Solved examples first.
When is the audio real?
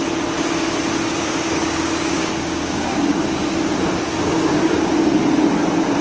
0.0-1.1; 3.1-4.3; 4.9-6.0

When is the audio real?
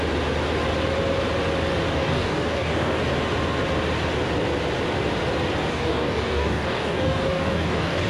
0.0-1.9; 3.0-5.7